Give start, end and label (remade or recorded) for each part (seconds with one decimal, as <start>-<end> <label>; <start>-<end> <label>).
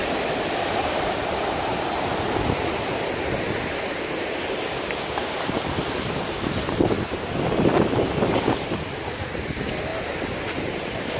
0.0-11.2 recorded